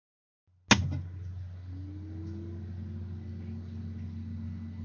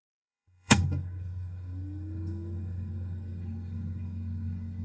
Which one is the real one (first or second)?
first